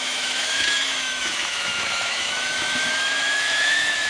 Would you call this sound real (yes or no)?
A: no